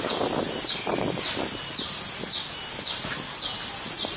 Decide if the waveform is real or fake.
real